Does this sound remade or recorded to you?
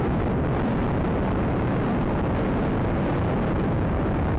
recorded